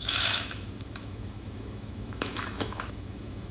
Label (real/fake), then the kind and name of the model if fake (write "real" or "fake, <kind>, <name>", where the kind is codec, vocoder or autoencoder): fake, autoencoder, DAC-VAE